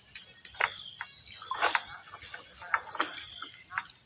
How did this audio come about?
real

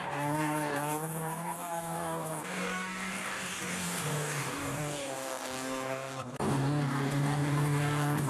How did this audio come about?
fake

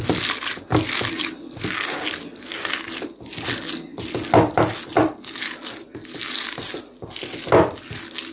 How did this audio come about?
real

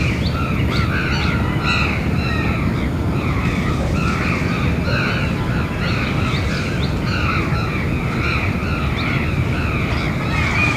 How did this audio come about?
real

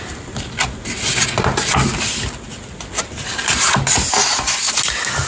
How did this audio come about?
real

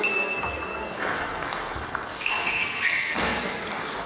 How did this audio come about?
fake